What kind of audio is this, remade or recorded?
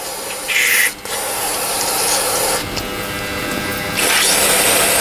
recorded